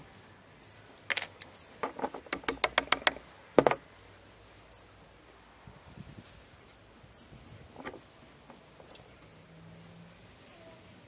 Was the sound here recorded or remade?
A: recorded